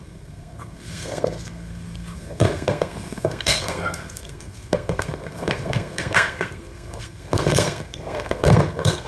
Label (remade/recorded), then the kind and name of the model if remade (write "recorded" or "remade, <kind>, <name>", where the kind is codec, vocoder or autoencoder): remade, codec, SNAC